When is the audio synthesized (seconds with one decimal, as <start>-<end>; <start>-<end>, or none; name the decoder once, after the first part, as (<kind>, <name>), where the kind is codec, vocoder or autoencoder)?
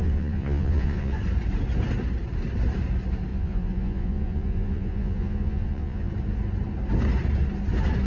0.0-1.2 (vocoder, Vocos); 3.3-6.1